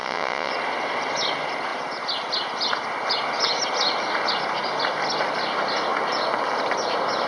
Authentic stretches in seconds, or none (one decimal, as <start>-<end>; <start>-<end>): 0.5-7.3